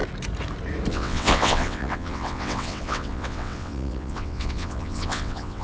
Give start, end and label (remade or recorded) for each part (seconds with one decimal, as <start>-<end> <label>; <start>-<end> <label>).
0.0-0.9 recorded; 0.9-5.6 remade